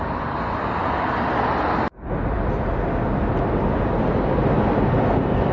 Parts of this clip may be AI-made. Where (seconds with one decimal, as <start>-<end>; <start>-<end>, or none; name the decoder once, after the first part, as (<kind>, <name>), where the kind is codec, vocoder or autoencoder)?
none